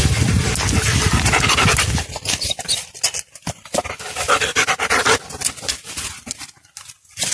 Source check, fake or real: real